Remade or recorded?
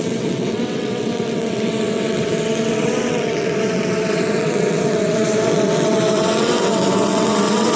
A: remade